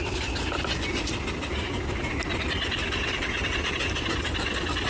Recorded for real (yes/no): yes